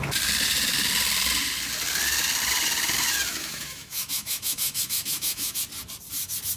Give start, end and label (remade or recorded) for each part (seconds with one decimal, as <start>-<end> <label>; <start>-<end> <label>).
0.0-3.3 recorded; 3.3-5.6 remade; 5.6-6.6 recorded